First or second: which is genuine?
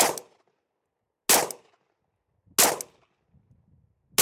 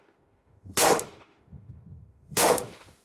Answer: first